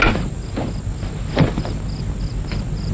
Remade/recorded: recorded